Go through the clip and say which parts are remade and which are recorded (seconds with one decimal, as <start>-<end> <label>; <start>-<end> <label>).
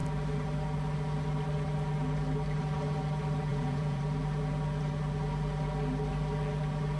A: 0.0-3.5 recorded; 3.5-4.0 remade; 4.0-7.0 recorded